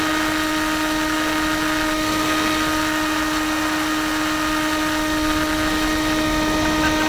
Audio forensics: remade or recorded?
recorded